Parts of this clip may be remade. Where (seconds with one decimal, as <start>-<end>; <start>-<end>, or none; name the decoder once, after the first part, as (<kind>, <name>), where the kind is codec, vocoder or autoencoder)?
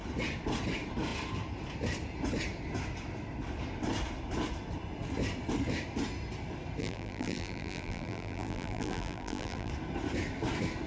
6.8-9.7 (vocoder, BigVGAN v2)